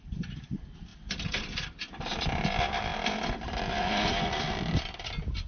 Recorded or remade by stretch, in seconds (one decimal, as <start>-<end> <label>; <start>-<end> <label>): 0.0-5.5 recorded